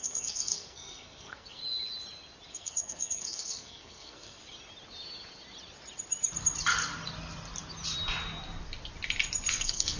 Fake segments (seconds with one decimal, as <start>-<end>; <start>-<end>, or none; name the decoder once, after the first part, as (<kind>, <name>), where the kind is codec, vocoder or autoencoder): 0.0-1.6 (codec, SNAC); 2.5-4.4; 9.5-10.0